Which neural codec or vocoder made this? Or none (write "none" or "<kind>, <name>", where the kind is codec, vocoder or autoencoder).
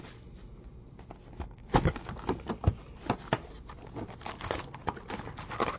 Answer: none